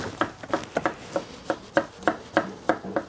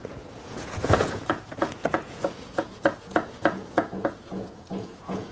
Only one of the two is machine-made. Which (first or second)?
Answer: second